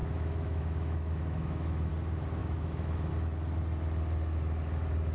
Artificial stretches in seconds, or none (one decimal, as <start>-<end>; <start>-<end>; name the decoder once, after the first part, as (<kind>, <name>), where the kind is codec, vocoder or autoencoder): 0.0-1.9 (autoencoder, DAC-VAE); 2.4-3.1